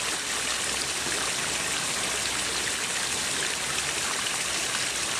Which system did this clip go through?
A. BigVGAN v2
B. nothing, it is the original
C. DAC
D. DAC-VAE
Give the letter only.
B